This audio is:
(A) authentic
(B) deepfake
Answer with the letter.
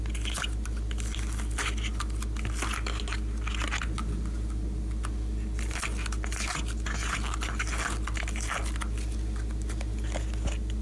A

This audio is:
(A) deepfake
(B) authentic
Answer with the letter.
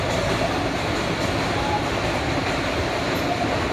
B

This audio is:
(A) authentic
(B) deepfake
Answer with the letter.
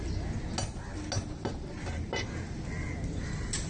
A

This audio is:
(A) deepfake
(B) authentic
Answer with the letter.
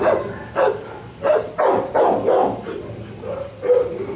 B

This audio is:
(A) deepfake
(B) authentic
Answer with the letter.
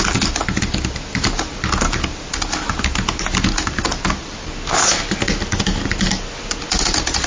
B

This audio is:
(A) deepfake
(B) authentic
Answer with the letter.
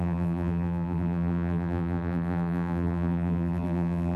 A